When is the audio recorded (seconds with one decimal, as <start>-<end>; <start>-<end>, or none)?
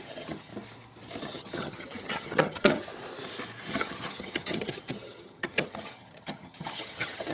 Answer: 0.5-1.2; 2.9-3.7